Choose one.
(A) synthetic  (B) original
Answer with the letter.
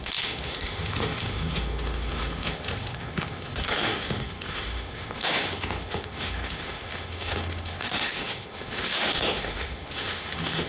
A